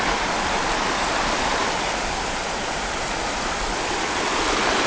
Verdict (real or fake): real